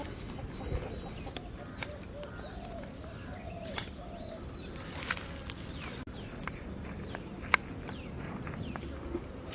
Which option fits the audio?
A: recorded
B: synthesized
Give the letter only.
A